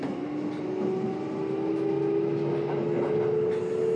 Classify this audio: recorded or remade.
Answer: recorded